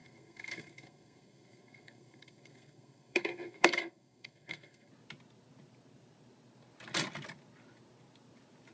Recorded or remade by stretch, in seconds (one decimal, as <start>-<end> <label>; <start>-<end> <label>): 0.0-4.9 remade; 4.9-8.7 recorded